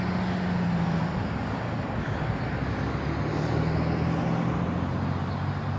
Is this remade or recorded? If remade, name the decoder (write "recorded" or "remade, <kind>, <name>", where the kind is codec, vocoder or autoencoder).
recorded